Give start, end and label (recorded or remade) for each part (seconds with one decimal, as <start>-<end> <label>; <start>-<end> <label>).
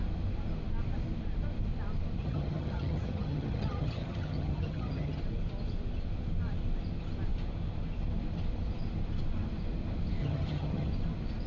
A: 0.0-2.2 recorded; 2.2-5.2 remade; 5.2-10.2 recorded; 10.2-10.9 remade; 10.9-11.5 recorded